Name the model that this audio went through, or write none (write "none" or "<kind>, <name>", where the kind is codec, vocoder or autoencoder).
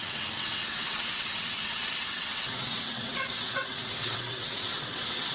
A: vocoder, WaveNeXt